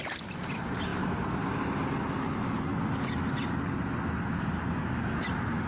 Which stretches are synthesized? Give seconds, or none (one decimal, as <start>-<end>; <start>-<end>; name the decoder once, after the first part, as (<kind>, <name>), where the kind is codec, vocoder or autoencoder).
0.0-0.9 (vocoder, BigVGAN v2); 2.2-2.7; 5.2-5.7